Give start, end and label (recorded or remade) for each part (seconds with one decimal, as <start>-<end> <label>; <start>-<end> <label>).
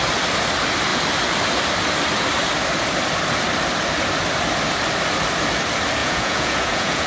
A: 0.0-6.0 recorded; 6.0-7.1 remade